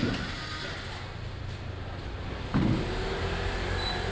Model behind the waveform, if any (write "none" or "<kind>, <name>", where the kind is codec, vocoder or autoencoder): none